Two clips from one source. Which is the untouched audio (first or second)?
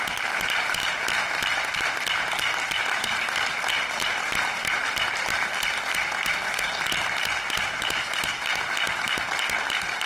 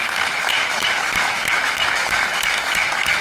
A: first